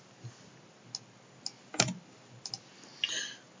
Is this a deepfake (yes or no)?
no